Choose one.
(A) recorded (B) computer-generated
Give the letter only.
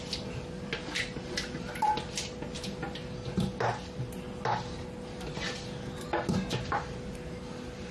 A